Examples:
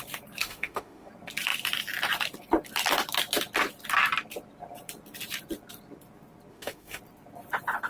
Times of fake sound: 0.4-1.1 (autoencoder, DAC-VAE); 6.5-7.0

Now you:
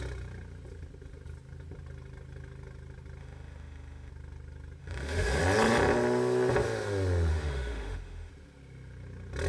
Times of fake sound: 3.2-4.1 (autoencoder, DAC-VAE); 4.8-5.4; 7.3-8.3

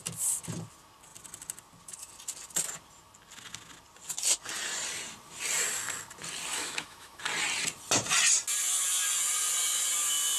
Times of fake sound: 6.5-7.2 (autoencoder, DAC-VAE)

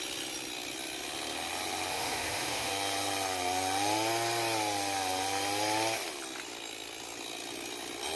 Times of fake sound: 1.9-2.7 (autoencoder, DAC-VAE)